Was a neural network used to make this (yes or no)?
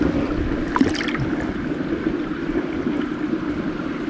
no